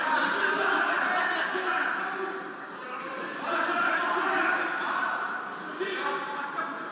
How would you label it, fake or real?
real